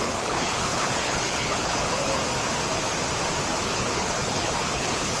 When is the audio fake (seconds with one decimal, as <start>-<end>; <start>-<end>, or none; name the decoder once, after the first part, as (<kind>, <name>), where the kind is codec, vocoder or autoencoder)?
0.0-2.2 (codec, HILCodec); 3.6-5.2